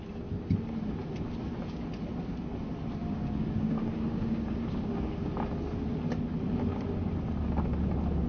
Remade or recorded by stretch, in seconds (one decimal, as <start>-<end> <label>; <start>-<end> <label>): 0.0-3.0 recorded; 3.0-5.3 remade; 5.3-8.3 recorded